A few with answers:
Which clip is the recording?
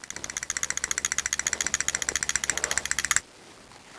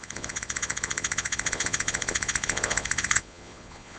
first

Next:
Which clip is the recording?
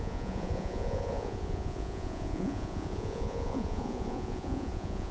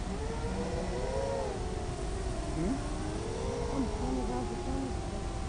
second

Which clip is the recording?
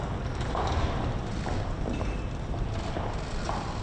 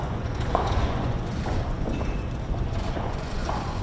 first